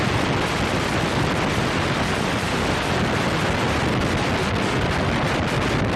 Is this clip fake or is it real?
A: real